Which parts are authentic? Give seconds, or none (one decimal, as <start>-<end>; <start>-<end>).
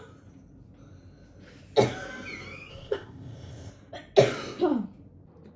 0.0-2.7; 3.7-5.6